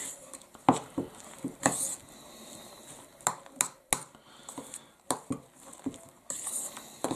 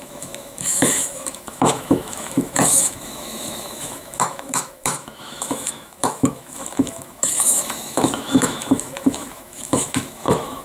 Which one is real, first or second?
first